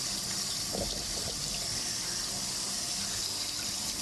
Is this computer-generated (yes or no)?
no